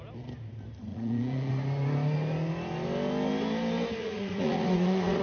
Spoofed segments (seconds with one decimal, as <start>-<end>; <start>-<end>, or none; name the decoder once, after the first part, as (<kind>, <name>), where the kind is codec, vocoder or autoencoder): 0.9-1.5 (vocoder, Vocos); 4.0-5.2